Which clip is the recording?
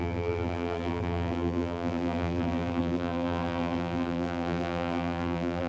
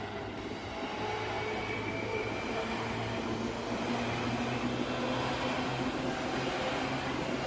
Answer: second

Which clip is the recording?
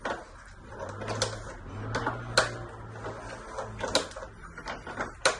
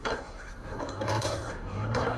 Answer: first